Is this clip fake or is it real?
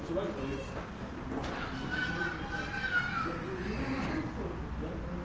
real